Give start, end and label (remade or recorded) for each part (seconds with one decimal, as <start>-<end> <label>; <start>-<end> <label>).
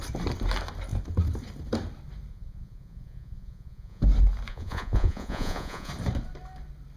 0.0-2.3 recorded; 2.3-4.0 remade; 4.0-4.5 recorded; 4.5-5.9 remade; 5.9-7.0 recorded